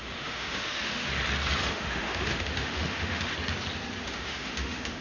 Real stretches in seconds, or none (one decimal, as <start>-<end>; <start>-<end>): 1.1-1.7; 3.3-4.0